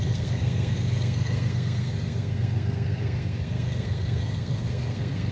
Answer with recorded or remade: remade